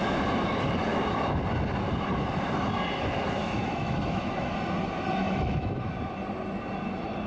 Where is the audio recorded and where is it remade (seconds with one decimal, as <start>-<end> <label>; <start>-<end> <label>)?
0.0-0.9 recorded; 0.9-1.4 remade; 1.4-3.4 recorded; 3.4-4.5 remade; 4.5-5.2 recorded; 5.2-5.9 remade; 5.9-7.3 recorded